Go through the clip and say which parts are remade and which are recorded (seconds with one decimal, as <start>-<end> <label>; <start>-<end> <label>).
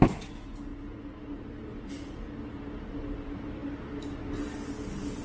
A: 0.0-5.2 recorded